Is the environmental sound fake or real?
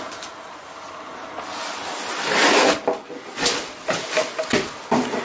real